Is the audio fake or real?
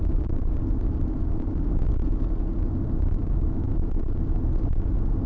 real